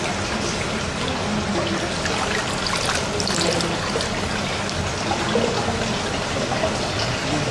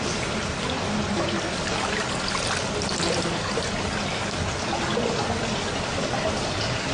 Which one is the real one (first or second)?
first